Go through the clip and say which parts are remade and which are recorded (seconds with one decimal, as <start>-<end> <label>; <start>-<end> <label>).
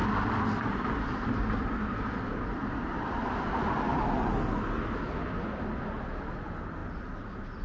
0.0-1.8 remade; 1.8-7.6 recorded